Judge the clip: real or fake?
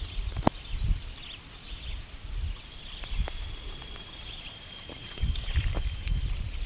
real